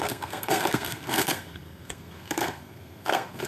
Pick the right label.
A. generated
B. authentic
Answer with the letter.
A